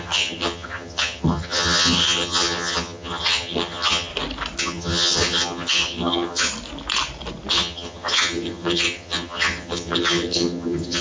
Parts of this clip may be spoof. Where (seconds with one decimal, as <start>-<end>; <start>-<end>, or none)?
0.0-4.1; 4.6-6.5; 7.5-11.0